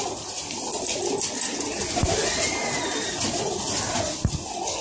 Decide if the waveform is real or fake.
real